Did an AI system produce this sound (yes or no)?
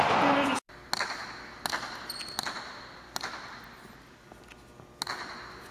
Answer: no